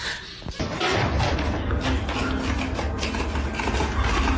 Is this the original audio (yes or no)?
yes